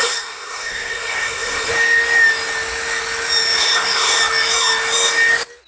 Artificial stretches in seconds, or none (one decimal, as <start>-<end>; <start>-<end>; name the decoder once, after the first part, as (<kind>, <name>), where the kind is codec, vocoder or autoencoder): 0.0-1.7 (codec, SNAC); 3.6-4.2